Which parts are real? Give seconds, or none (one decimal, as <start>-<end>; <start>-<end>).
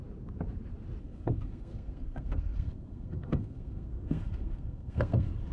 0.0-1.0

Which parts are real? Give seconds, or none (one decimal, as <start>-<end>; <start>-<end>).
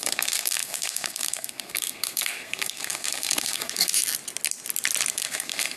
3.9-5.1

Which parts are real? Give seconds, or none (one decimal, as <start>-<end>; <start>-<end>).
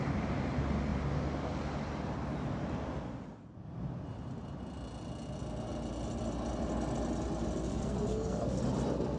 0.0-7.7; 8.6-9.2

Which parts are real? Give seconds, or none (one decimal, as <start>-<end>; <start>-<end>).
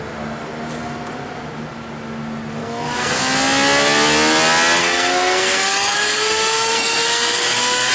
0.0-2.6; 3.2-4.8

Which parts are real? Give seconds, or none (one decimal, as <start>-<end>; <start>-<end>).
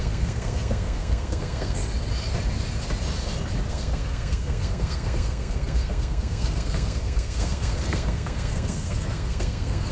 1.8-3.7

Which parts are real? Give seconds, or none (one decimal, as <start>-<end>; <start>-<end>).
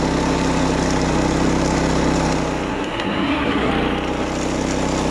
0.0-2.7; 3.7-5.1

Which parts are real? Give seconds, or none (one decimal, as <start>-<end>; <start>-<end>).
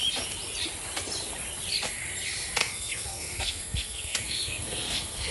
0.0-2.6